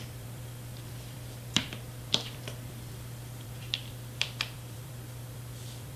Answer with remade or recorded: remade